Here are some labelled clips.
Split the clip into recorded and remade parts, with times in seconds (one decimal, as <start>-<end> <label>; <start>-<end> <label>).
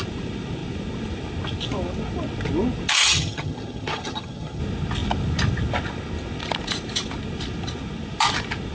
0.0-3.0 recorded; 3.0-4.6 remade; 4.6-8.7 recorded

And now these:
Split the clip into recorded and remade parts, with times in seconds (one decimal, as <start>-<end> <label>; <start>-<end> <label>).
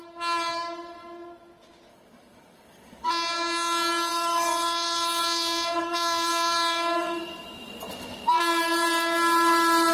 0.0-1.9 recorded; 1.9-3.1 remade; 3.1-4.1 recorded; 4.1-7.2 remade; 7.2-9.9 recorded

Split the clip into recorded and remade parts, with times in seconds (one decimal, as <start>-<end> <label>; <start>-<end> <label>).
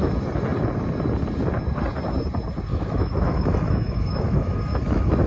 0.0-2.7 recorded; 2.7-5.3 remade